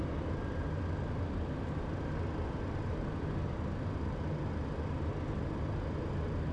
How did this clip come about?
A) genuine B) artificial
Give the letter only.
A